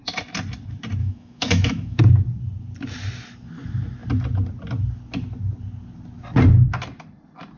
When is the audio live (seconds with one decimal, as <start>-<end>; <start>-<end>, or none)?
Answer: 0.0-1.0; 2.0-7.6